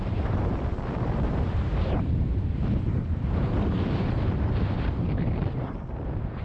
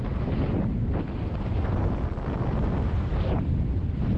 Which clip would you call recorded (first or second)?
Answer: second